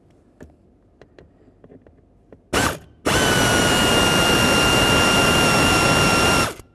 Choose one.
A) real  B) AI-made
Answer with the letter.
A